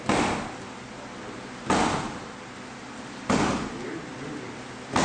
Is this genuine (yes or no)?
yes